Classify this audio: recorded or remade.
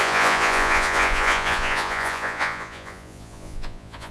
remade